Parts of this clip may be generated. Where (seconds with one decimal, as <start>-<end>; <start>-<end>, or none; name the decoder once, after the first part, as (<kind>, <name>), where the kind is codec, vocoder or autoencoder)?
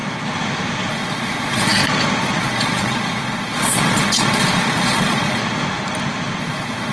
0.9-1.8 (vocoder, Vocos); 2.4-5.4; 6.4-6.9